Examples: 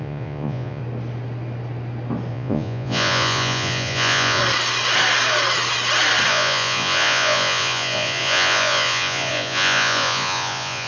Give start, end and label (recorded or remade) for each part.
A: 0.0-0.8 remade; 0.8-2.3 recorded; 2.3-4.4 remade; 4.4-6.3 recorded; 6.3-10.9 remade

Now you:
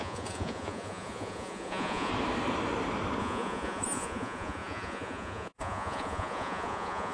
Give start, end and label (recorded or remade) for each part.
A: 0.0-2.1 remade; 2.1-3.2 recorded; 3.2-7.1 remade

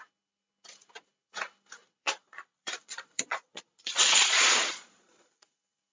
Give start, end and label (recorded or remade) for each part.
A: 0.0-1.8 recorded; 1.8-5.3 remade; 5.3-5.9 recorded

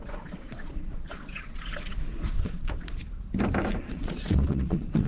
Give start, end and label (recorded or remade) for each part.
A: 0.0-3.0 remade; 3.0-3.8 recorded; 3.8-5.1 remade

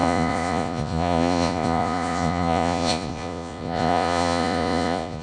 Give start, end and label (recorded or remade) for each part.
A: 0.0-5.2 remade

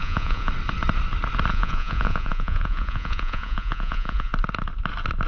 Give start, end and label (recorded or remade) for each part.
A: 0.0-0.5 remade; 0.5-1.5 recorded; 1.5-4.3 remade; 4.3-5.3 recorded

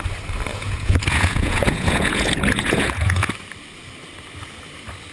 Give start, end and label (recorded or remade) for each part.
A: 0.0-0.5 recorded; 0.5-3.3 remade; 3.3-5.1 recorded

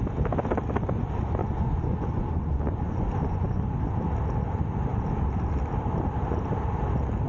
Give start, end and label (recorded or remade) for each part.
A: 0.0-1.4 recorded; 1.4-3.6 remade; 3.6-7.3 recorded